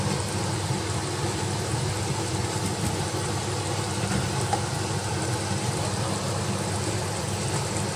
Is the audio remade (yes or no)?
no